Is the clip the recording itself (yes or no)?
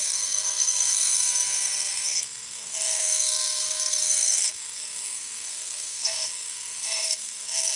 no